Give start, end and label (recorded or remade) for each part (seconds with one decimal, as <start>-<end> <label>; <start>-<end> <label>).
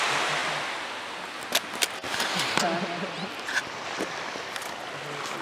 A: 0.0-5.4 recorded